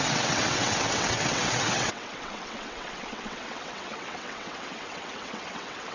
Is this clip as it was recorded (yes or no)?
no